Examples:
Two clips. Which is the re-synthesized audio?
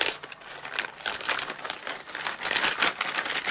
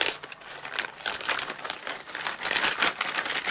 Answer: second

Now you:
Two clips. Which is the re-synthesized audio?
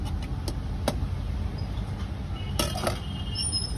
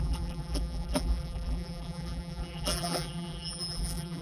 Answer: second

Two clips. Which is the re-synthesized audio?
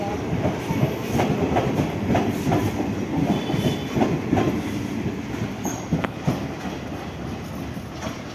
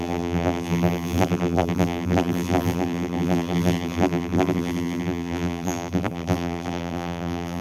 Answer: second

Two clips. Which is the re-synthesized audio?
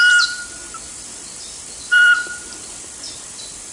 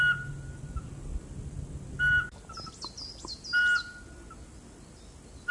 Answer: first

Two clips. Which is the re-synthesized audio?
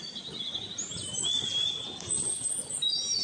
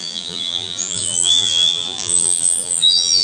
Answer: second